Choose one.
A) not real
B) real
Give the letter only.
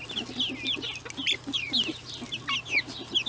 B